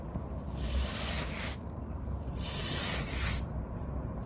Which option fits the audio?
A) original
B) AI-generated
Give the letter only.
A